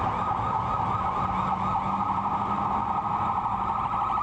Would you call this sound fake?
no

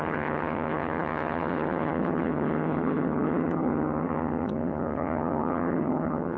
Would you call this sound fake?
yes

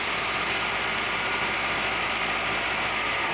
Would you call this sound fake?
no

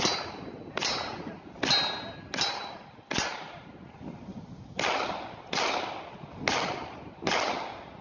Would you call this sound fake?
no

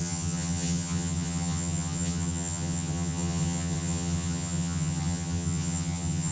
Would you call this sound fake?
yes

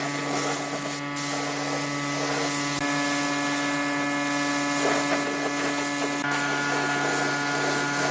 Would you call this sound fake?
no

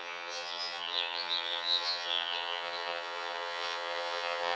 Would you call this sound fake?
yes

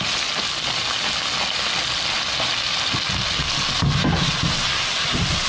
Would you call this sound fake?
no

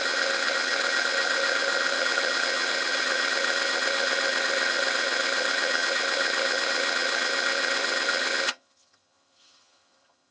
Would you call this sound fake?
yes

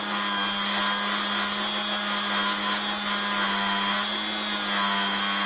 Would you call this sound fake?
no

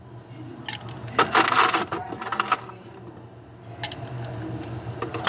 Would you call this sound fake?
no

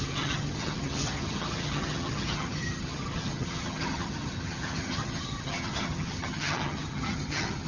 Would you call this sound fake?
yes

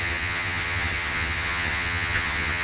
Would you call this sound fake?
yes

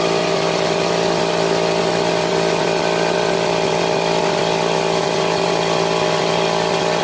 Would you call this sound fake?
no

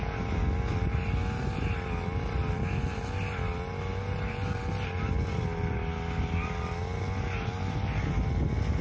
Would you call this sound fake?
no